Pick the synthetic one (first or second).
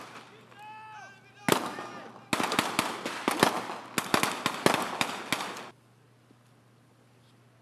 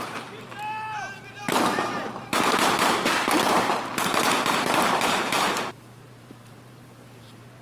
second